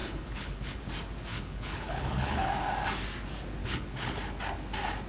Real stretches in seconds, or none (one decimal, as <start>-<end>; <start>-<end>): 0.8-1.3; 2.5-3.6; 4.2-5.1